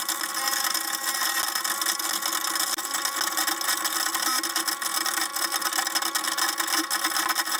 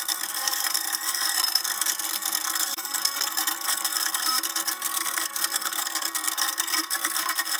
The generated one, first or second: second